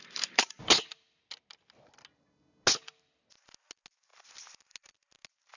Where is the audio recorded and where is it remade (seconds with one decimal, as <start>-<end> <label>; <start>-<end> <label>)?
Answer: 0.0-0.7 remade; 0.7-5.6 recorded